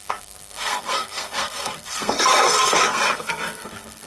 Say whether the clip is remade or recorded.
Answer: remade